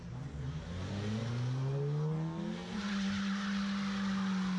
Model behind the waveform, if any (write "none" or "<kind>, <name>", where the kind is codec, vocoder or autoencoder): none